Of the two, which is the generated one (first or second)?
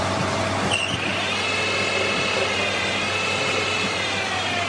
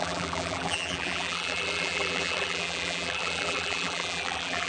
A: second